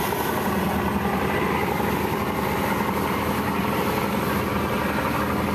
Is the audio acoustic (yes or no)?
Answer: yes